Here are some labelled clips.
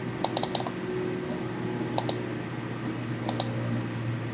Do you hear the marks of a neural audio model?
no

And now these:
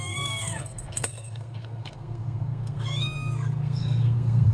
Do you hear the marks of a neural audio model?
yes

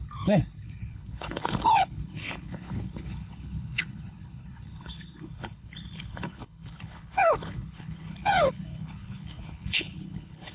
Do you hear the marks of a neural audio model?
yes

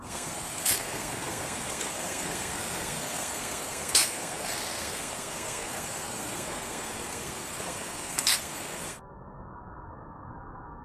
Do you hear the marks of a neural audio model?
yes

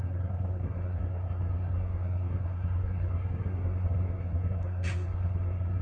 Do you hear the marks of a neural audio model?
yes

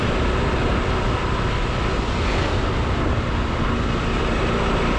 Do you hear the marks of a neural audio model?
no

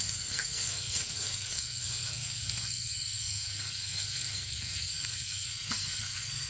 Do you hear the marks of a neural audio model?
yes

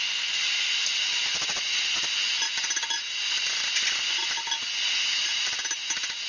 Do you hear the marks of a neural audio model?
no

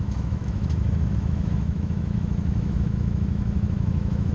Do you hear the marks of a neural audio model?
yes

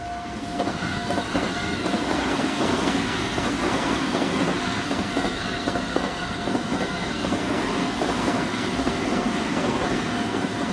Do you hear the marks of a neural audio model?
yes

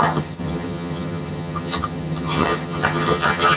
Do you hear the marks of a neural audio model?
yes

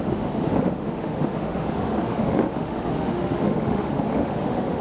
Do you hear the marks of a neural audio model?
yes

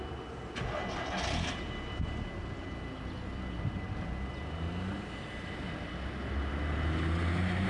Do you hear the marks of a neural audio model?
no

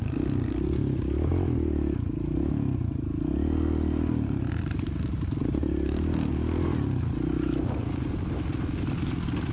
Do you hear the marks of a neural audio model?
no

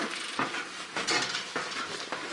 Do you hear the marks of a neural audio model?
no